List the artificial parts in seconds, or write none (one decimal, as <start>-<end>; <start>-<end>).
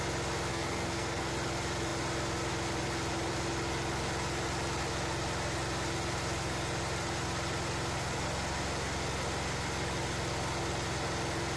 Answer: 0.5-1.3